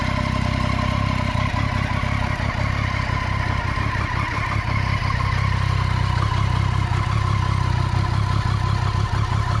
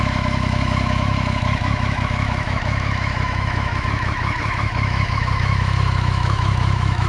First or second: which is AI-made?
second